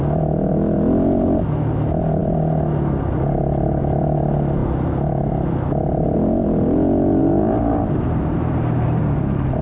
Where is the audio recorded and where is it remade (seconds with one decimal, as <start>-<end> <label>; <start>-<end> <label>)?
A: 0.0-7.2 recorded; 7.2-9.0 remade; 9.0-9.6 recorded